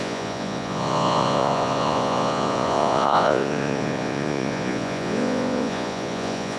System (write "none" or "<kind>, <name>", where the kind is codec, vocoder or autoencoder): vocoder, Vocos